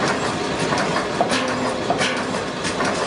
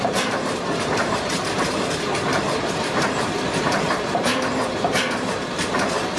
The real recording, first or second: first